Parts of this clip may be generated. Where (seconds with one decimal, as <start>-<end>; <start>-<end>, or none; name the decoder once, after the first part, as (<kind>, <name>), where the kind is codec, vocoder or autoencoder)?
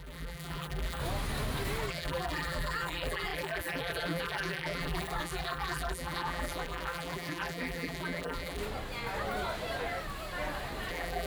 0.0-1.0 (vocoder, BigVGAN v2); 1.9-8.6; 10.9-11.3